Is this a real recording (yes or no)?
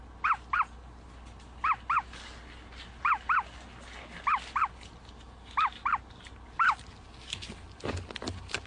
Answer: yes